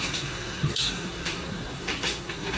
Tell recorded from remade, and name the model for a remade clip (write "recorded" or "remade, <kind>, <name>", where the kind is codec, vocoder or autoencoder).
remade, codec, SNAC